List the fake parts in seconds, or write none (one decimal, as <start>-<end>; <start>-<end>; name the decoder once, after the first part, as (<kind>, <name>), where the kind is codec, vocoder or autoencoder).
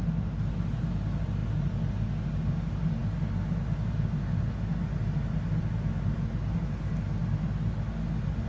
none